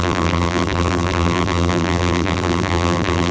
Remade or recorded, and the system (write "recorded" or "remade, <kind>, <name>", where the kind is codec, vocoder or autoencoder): remade, vocoder, BigVGAN v2